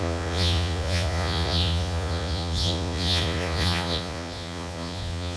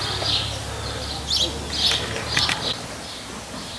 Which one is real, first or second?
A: second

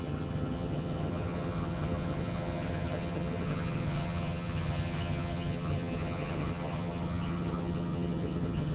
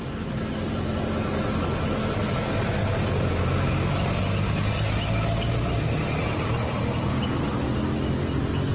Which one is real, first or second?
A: second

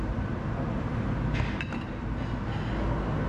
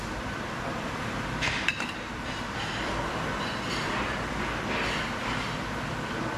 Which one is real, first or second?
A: first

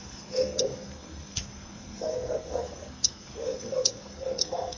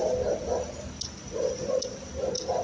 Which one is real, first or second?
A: second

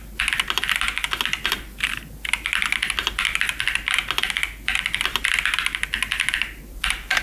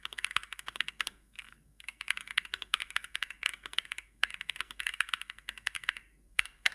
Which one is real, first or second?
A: first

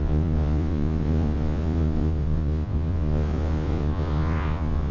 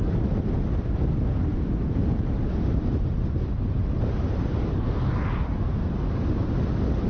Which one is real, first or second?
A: second